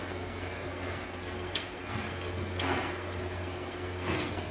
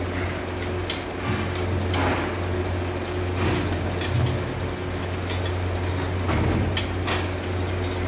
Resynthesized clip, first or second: first